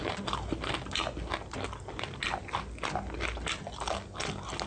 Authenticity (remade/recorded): recorded